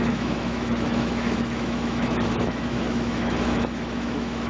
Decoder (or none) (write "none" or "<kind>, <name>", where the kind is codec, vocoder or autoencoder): autoencoder, DAC-VAE